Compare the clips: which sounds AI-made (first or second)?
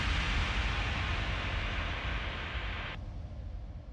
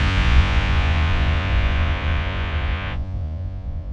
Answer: second